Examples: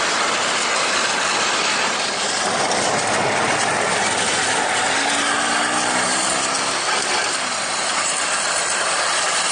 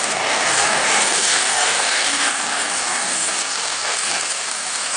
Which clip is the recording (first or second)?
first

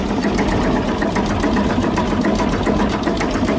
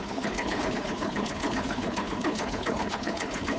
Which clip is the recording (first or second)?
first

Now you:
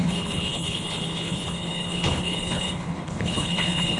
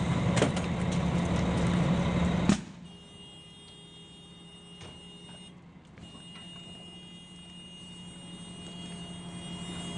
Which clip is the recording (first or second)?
second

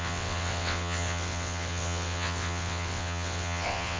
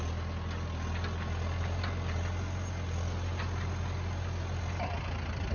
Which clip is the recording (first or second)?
second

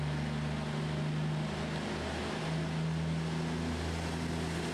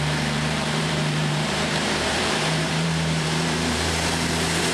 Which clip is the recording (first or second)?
first